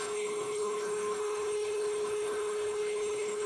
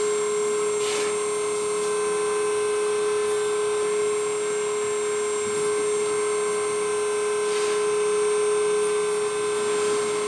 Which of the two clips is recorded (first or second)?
second